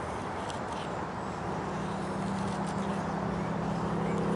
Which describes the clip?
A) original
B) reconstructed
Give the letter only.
A